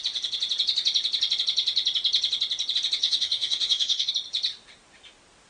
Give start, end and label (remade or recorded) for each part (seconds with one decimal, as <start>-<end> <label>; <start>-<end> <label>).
0.0-3.0 recorded; 3.0-4.1 remade; 4.1-5.5 recorded